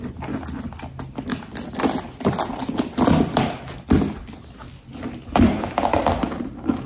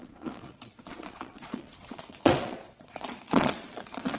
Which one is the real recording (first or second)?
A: first